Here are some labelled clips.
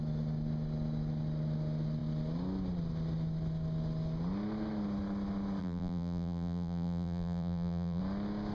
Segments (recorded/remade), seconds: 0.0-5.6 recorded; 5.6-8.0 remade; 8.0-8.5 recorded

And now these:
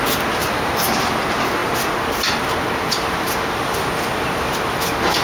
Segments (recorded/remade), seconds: 0.0-0.4 recorded; 0.4-1.0 remade; 1.0-5.2 recorded

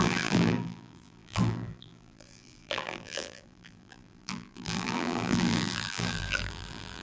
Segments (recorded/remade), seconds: 0.0-7.0 remade

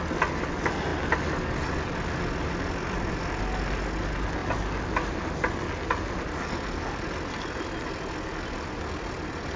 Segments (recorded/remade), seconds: 0.0-9.6 recorded

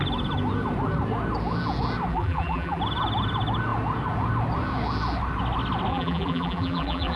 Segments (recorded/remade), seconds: 0.0-2.1 recorded; 2.1-2.8 remade; 2.8-5.9 recorded; 5.9-7.2 remade

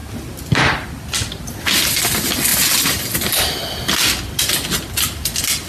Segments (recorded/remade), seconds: 0.0-5.7 recorded

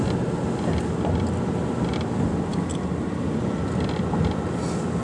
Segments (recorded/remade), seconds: 0.0-5.0 recorded